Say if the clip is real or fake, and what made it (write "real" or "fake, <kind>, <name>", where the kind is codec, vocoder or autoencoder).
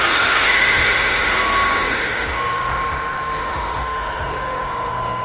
fake, autoencoder, DAC-VAE